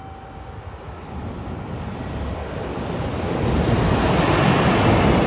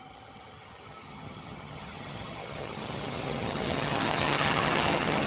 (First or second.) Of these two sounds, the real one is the first